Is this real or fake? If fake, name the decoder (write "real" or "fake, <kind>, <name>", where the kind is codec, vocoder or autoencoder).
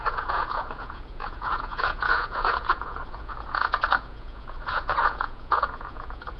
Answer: fake, vocoder, Vocos